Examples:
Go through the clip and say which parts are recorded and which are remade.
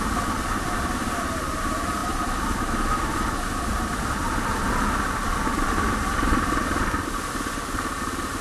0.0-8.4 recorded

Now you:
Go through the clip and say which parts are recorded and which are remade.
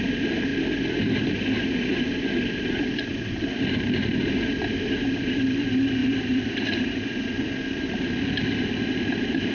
0.0-0.5 recorded; 0.5-4.2 remade; 4.2-6.0 recorded; 6.0-8.3 remade; 8.3-9.5 recorded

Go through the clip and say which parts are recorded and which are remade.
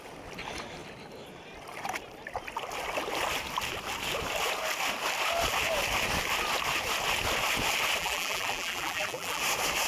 0.0-8.0 recorded; 8.0-9.4 remade; 9.4-9.9 recorded